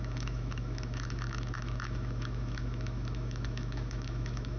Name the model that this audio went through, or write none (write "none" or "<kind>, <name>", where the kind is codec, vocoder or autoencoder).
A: autoencoder, DAC-VAE